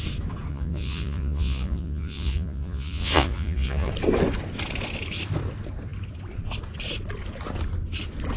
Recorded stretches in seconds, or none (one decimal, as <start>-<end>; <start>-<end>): 0.0-0.5; 3.9-8.4